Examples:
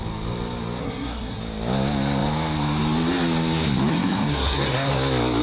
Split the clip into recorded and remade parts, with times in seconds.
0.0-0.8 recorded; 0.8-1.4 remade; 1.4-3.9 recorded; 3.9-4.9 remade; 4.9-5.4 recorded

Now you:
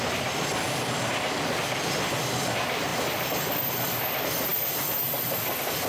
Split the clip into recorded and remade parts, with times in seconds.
0.0-5.9 recorded

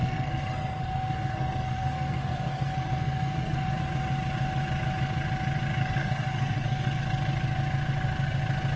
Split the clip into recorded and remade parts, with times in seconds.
0.0-3.7 remade; 3.7-5.8 recorded; 5.8-7.0 remade; 7.0-8.8 recorded